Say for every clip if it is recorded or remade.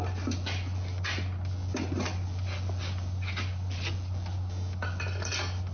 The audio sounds recorded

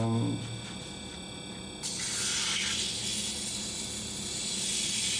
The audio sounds recorded